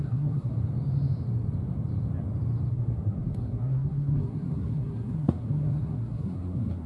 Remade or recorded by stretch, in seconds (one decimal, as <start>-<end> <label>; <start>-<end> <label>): 0.0-0.5 remade; 0.5-2.7 recorded; 2.7-6.9 remade